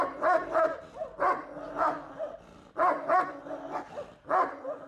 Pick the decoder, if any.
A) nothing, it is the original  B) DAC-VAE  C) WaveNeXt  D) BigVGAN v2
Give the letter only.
A